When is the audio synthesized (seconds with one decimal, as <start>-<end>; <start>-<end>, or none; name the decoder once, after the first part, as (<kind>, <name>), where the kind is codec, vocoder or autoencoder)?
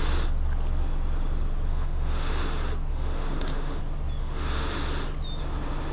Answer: 1.7-2.3 (autoencoder, DAC-VAE); 2.9-3.8; 4.2-4.8